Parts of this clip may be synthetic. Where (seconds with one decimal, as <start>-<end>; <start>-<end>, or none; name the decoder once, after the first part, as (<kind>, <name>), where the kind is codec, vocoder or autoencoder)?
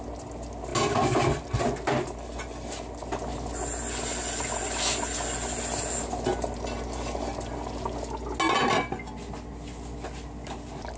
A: none